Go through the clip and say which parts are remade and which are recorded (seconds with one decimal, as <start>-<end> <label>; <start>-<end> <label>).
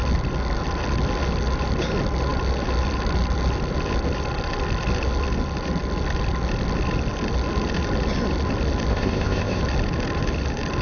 0.0-8.9 recorded; 8.9-9.6 remade; 9.6-10.8 recorded